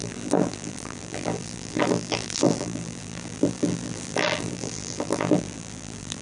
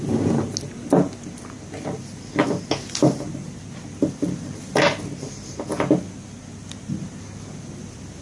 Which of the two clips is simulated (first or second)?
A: first